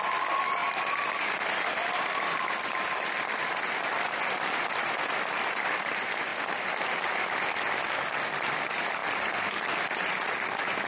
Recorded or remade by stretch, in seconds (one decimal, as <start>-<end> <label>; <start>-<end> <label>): 0.0-10.9 recorded